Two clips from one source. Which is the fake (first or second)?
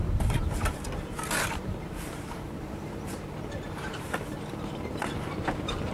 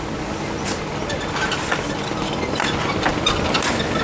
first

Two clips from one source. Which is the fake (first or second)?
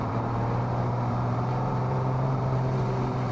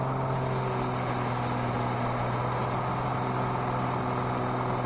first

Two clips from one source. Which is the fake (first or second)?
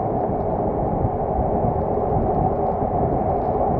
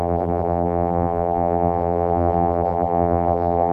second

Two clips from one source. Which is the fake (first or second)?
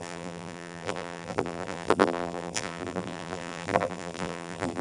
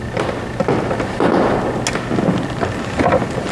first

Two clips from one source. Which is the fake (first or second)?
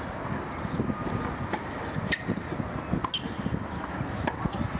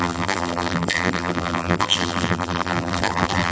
second